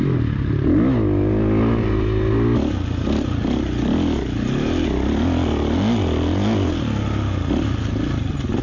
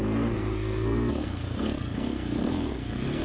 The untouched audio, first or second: first